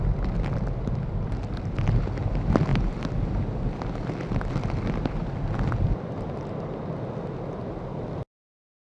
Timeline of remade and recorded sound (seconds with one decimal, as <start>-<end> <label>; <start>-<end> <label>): 0.0-8.9 recorded